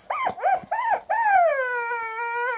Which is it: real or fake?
real